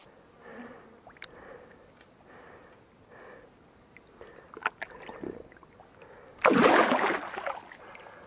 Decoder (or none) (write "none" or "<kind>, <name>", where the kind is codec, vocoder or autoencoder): none